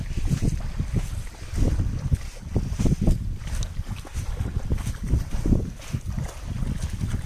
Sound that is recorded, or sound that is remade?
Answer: recorded